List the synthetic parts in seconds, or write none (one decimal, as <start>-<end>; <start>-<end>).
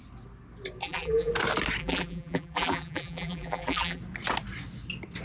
0.8-1.3; 1.8-4.0